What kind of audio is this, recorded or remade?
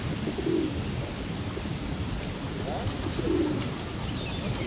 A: recorded